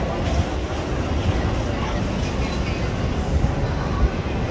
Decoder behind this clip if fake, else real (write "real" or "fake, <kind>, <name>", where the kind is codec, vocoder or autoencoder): real